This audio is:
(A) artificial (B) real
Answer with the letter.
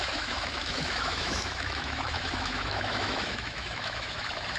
A